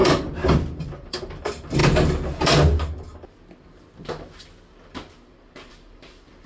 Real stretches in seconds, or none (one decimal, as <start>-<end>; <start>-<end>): 0.0-0.6; 1.8-5.7